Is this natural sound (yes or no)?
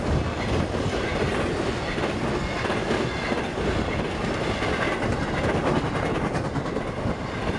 yes